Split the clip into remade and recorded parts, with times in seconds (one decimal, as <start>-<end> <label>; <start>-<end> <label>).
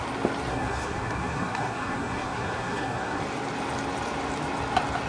0.0-0.5 recorded; 0.5-3.2 remade; 3.2-5.1 recorded